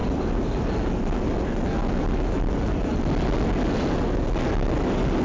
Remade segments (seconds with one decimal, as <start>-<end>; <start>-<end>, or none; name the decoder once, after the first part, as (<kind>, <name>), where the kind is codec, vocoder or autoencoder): none